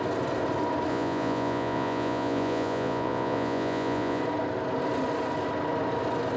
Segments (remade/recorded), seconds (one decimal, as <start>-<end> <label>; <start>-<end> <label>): 0.0-0.9 recorded; 0.9-4.2 remade; 4.2-6.4 recorded